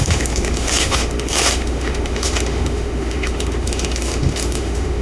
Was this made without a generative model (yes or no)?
no